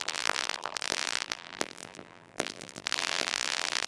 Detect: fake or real fake